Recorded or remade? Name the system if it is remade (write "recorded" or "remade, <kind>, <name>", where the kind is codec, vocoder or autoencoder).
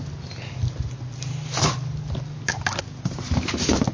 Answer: recorded